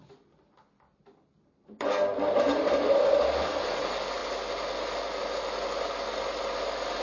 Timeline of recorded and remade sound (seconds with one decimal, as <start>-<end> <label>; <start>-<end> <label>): 0.0-7.0 recorded